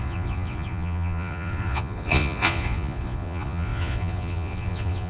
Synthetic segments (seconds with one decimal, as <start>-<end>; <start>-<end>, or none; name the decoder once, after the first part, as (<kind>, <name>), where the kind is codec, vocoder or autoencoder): 0.0-5.1 (vocoder, Vocos)